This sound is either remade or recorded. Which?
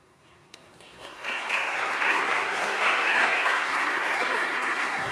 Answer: remade